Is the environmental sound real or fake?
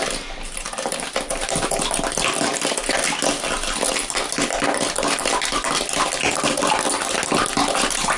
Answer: real